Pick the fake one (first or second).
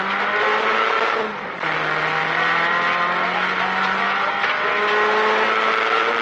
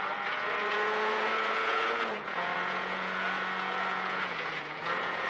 second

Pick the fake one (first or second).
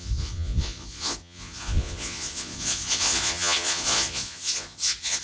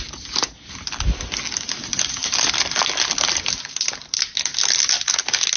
first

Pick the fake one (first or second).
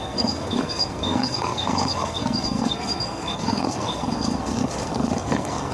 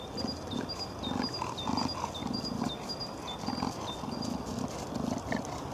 first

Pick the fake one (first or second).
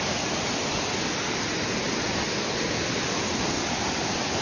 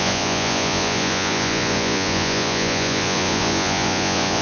second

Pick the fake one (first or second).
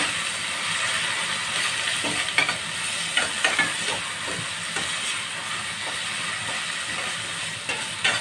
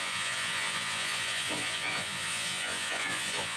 second